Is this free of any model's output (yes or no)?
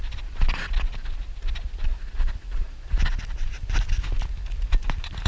yes